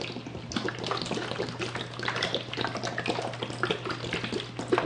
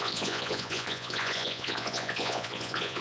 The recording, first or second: first